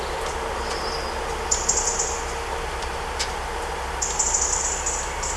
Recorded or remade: recorded